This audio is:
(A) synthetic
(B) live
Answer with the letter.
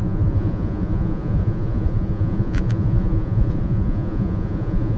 A